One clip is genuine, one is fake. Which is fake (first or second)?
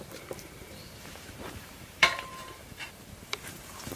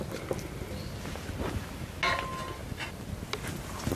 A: first